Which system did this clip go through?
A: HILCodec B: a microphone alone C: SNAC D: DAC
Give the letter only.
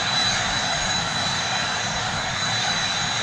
D